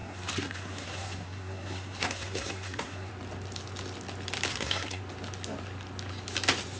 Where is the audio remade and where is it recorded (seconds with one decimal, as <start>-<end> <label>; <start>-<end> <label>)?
0.0-3.1 remade; 3.1-4.5 recorded; 4.5-5.0 remade; 5.0-6.8 recorded

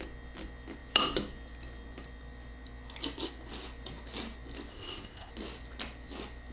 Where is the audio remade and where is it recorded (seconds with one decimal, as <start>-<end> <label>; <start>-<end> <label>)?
0.0-4.7 recorded; 4.7-5.3 remade; 5.3-6.5 recorded